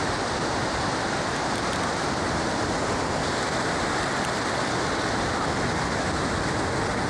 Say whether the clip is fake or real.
real